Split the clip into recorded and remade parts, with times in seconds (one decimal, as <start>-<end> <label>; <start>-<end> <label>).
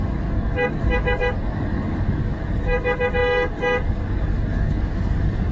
0.0-5.5 remade